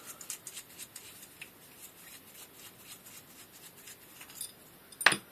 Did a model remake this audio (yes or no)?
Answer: no